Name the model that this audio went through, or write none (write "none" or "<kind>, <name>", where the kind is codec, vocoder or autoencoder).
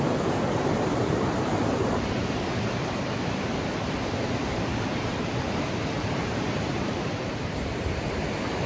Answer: vocoder, BigVGAN v2